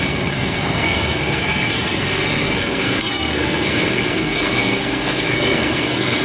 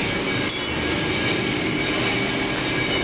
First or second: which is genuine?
second